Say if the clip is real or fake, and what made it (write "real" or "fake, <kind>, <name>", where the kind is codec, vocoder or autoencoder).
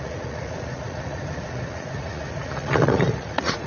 fake, vocoder, Vocos